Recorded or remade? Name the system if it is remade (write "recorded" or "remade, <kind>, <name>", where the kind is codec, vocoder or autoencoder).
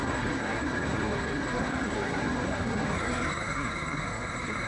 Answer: remade, codec, SNAC